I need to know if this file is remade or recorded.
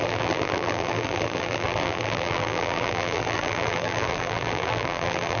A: remade